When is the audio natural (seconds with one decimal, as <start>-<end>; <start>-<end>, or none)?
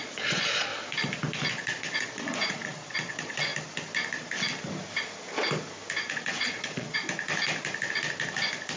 0.7-1.5; 3.5-6.1; 7.0-8.8